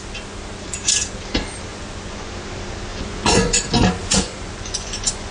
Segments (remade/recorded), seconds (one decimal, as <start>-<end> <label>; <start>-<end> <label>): 0.0-1.7 recorded; 1.7-2.3 remade; 2.3-2.9 recorded; 2.9-3.6 remade; 3.6-4.0 recorded; 4.0-5.3 remade